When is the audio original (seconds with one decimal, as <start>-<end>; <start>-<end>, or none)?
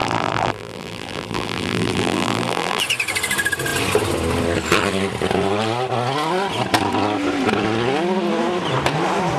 2.8-9.4